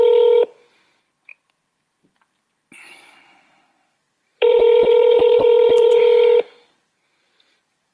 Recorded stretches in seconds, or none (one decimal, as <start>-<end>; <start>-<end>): 0.0-1.3; 6.0-7.9